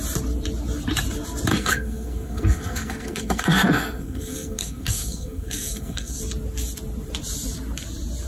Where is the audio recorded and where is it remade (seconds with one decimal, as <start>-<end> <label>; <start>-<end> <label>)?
0.0-1.5 recorded; 1.5-6.2 remade; 6.2-8.3 recorded